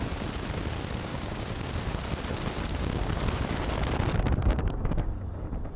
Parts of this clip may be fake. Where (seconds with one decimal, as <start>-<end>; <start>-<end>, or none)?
1.1-1.7; 2.7-3.2; 4.4-5.1

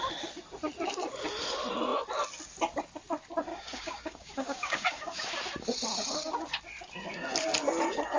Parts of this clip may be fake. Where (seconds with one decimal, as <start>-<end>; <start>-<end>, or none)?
3.5-5.4

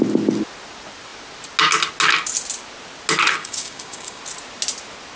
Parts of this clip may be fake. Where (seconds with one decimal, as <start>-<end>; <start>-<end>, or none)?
3.4-4.2